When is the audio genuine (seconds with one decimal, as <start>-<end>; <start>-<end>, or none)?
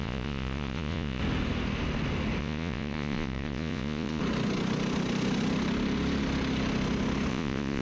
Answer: 1.2-2.4; 4.2-7.3